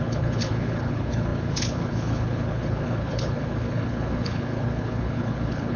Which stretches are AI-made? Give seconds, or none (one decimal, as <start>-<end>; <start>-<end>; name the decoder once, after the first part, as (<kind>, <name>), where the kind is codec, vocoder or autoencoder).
0.0-5.8 (codec, HILCodec)

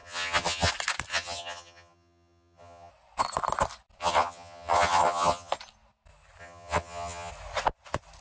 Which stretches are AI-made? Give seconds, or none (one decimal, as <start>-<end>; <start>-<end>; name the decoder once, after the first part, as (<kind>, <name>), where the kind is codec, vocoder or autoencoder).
0.0-0.7 (vocoder, HiFi-GAN); 1.1-2.9; 4.0-5.5; 6.4-7.3

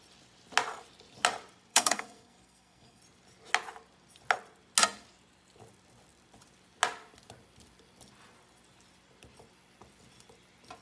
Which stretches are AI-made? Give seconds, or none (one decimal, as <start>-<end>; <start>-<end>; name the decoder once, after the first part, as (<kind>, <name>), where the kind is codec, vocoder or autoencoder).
1.7-3.0 (codec, SNAC)

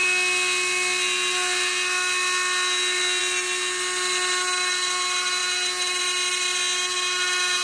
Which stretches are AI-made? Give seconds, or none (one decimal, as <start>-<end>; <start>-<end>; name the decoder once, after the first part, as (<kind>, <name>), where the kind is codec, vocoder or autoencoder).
none